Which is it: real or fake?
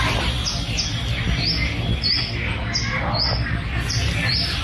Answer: real